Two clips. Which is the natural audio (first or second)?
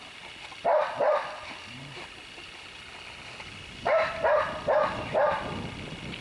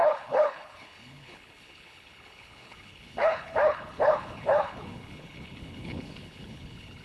first